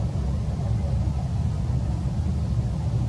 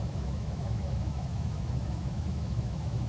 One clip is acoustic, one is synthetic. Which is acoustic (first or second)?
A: first